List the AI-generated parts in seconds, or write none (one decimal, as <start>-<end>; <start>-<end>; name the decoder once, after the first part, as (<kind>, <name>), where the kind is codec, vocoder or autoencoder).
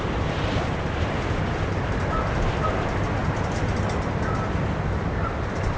none